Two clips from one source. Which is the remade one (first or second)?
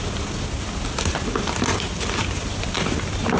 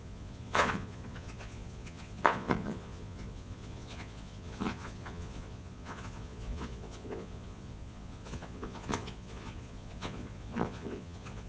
second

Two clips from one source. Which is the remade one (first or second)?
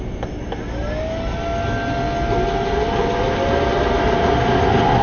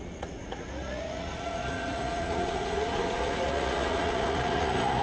second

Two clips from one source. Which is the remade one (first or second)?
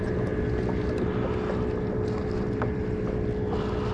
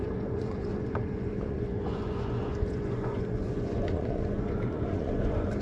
second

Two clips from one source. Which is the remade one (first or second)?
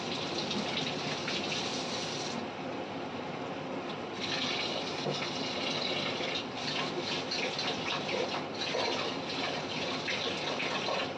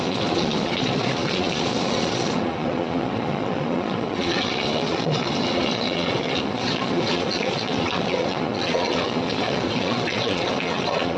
second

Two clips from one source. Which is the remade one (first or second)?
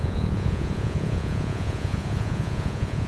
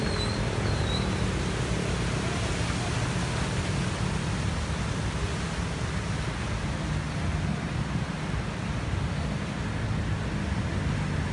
first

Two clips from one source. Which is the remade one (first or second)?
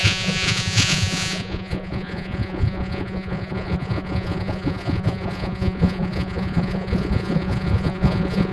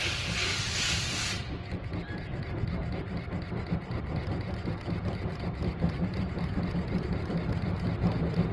first